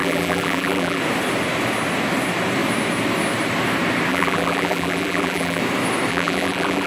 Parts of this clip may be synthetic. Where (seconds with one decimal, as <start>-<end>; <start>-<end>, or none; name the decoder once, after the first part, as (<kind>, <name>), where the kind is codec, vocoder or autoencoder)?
0.0-1.0 (vocoder, BigVGAN v2); 4.1-5.6; 6.1-6.9